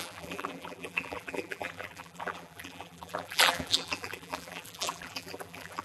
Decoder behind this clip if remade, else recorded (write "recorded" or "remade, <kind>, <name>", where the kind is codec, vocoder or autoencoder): remade, vocoder, BigVGAN v2